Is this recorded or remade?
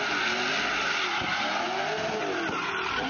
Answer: recorded